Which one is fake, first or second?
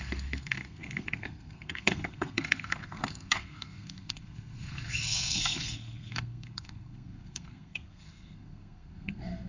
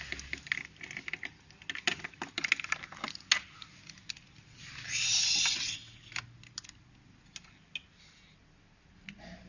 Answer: first